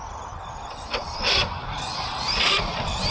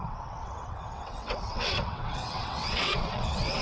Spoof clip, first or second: second